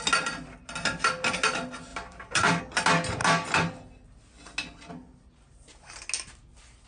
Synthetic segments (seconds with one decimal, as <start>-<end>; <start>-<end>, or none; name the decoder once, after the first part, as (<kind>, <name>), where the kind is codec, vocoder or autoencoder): 1.9-2.6 (vocoder, BigVGAN v2)